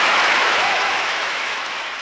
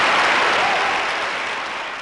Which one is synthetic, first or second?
first